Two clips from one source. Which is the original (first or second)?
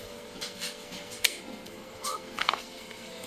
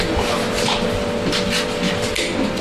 second